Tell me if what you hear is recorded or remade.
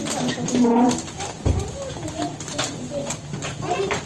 recorded